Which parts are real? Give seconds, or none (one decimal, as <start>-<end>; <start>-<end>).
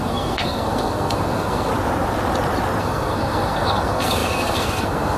1.7-2.8